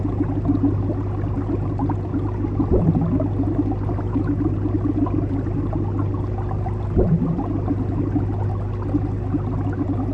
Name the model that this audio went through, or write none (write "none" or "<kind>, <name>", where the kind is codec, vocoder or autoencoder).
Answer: none